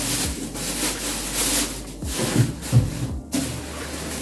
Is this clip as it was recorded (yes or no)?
yes